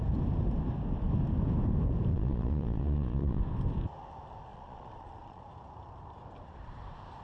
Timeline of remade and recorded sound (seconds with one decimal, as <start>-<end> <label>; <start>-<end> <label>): 0.0-2.1 recorded; 2.1-3.4 remade; 3.4-4.5 recorded; 4.5-5.4 remade; 5.4-7.2 recorded